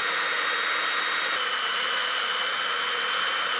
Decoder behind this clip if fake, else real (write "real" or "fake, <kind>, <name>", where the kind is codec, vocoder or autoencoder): real